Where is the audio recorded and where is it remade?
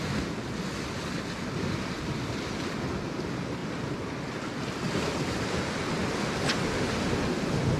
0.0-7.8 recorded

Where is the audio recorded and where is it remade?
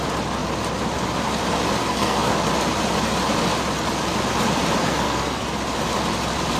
0.0-1.8 recorded; 1.8-2.3 remade; 2.3-4.8 recorded; 4.8-5.4 remade; 5.4-6.6 recorded